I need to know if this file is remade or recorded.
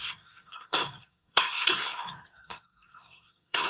remade